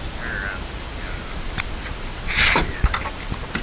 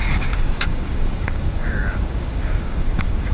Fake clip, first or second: second